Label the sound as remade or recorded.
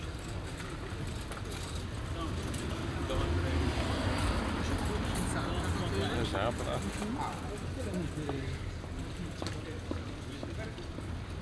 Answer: recorded